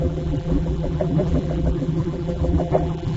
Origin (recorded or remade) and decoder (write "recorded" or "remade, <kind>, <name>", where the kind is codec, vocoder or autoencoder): remade, vocoder, BigVGAN v2